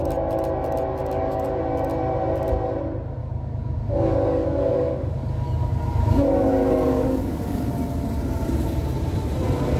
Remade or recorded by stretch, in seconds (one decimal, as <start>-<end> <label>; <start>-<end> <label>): 0.0-1.0 recorded; 1.0-1.6 remade; 1.6-3.2 recorded; 3.2-7.7 remade; 7.7-9.8 recorded